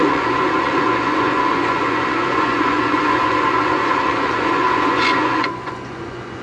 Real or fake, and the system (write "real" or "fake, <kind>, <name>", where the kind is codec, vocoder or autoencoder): fake, vocoder, Vocos